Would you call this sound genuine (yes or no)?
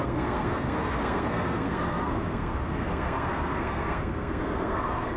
no